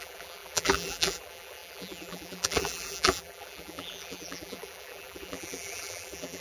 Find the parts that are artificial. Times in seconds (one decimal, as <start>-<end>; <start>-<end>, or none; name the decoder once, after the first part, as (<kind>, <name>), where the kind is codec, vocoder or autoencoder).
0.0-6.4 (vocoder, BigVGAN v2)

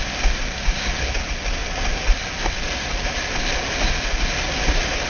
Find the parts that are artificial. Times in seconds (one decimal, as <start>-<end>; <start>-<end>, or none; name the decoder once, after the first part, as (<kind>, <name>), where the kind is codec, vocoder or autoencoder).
none

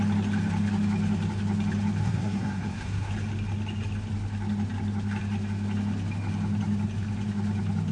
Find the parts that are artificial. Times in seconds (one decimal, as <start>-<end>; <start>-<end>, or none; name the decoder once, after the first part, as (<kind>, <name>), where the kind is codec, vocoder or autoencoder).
2.0-3.1 (codec, SNAC)